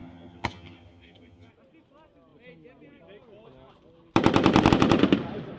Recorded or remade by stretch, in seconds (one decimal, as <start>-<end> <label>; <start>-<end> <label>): 0.0-1.5 remade; 1.5-5.6 recorded